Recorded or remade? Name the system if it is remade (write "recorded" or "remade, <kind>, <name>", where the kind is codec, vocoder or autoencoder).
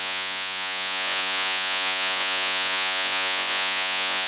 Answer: remade, vocoder, Vocos